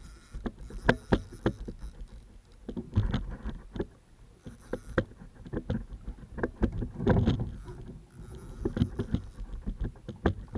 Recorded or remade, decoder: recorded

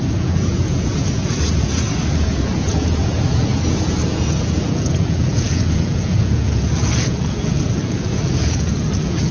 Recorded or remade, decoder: remade, vocoder, Vocos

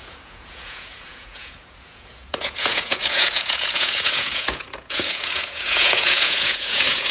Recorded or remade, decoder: remade, vocoder, Vocos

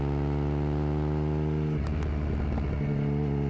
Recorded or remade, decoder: recorded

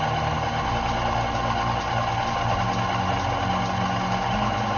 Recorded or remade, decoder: recorded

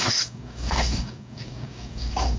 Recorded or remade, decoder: remade, codec, DAC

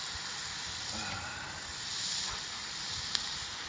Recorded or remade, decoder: recorded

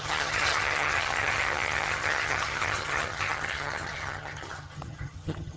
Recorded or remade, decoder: remade, vocoder, HiFi-GAN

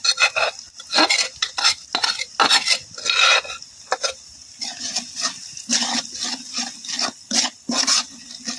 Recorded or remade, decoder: recorded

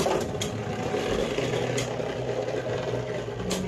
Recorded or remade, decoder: recorded